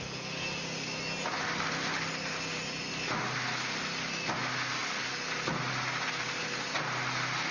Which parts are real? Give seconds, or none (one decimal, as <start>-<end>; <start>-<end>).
0.0-7.5